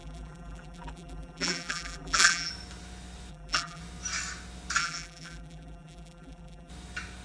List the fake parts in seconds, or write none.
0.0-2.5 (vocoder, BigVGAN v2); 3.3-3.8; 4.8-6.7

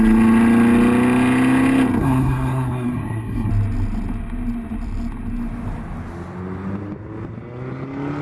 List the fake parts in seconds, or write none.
2.0-3.5 (codec, SNAC)